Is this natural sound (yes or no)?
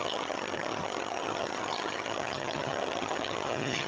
no